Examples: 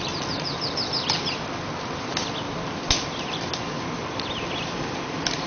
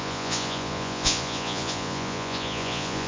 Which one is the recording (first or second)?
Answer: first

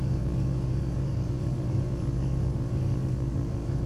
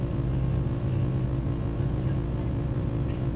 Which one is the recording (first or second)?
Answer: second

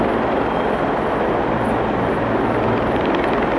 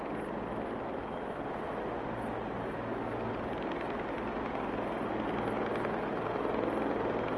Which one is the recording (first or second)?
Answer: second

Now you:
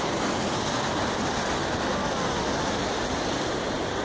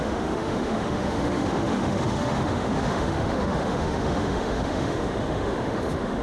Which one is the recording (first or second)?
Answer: first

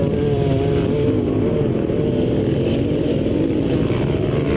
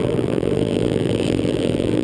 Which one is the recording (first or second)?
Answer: first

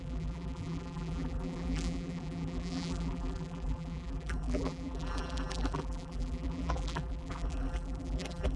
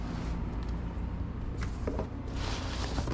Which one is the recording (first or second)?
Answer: second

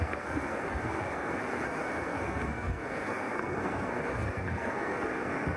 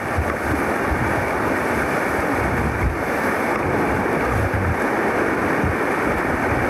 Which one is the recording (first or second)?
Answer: second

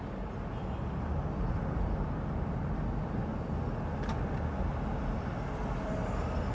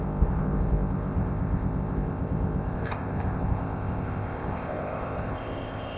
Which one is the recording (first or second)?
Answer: first